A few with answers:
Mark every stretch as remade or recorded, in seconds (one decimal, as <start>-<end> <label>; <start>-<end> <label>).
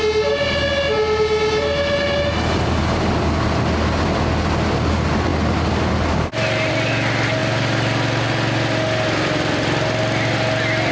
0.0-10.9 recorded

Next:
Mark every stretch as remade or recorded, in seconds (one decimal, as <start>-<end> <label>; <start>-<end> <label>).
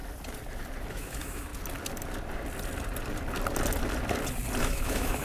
0.0-0.9 recorded; 0.9-1.5 remade; 1.5-4.6 recorded; 4.6-5.2 remade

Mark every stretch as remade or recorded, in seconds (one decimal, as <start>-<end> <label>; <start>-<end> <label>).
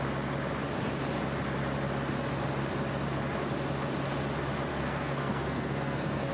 0.0-4.7 recorded; 4.7-6.3 remade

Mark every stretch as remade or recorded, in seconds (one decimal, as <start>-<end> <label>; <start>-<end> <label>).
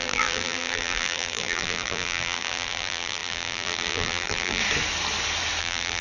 0.0-4.6 remade; 4.6-5.6 recorded; 5.6-6.0 remade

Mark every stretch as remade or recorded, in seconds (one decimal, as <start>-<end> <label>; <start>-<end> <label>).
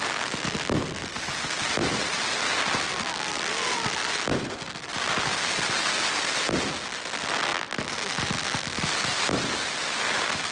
0.0-10.5 recorded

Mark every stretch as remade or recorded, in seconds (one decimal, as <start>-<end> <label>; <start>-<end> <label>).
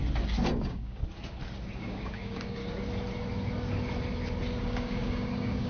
0.0-0.6 recorded; 0.6-1.0 remade; 1.0-1.8 recorded; 1.8-2.6 remade; 2.6-4.6 recorded; 4.6-5.7 remade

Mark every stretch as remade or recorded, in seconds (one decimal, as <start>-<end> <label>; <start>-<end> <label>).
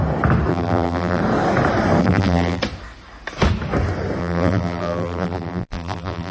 0.0-0.5 recorded; 0.5-1.2 remade; 1.2-2.0 recorded; 2.0-2.6 remade; 2.6-4.2 recorded; 4.2-6.3 remade